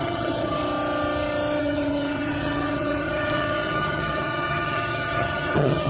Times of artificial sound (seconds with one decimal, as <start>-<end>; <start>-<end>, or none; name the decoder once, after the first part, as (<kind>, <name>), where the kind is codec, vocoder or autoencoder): 0.0-0.6 (vocoder, HiFi-GAN); 1.6-5.9